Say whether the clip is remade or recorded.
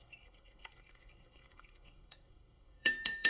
remade